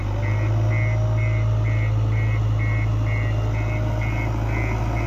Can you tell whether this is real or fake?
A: real